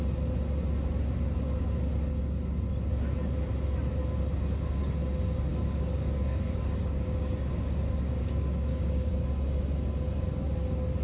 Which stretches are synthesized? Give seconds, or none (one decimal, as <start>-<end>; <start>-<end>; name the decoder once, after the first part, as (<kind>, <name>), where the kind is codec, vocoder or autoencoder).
5.5-9.1 (codec, DAC)